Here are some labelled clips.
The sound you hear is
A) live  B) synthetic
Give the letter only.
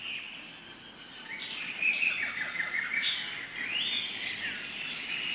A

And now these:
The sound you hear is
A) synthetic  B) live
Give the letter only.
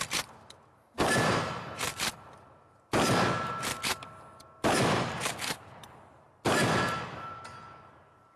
A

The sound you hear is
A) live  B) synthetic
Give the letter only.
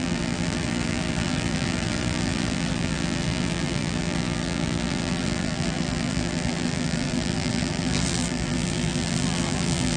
B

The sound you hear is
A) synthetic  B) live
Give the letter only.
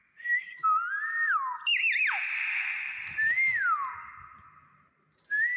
B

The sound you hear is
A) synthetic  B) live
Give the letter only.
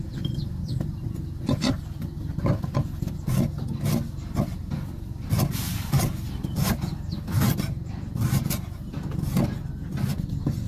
B